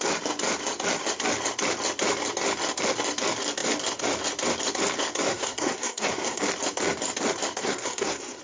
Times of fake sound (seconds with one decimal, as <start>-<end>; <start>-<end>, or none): 5.3-6.4; 7.6-8.4